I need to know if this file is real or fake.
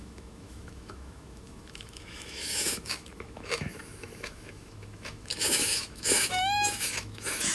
fake